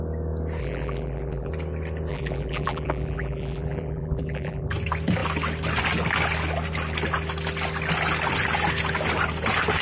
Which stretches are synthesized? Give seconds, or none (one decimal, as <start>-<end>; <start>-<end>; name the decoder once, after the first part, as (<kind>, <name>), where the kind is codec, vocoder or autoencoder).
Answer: 0.6-1.5 (vocoder, BigVGAN v2); 2.1-4.7